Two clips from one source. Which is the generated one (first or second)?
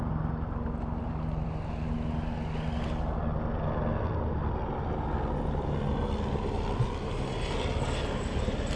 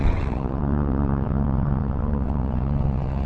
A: second